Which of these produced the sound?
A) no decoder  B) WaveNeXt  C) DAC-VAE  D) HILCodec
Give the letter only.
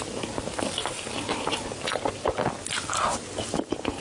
A